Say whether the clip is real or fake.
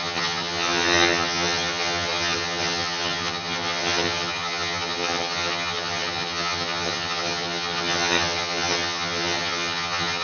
fake